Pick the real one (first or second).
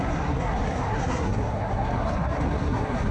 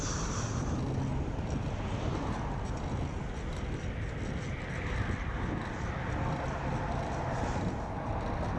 second